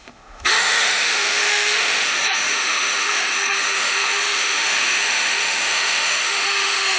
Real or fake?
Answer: fake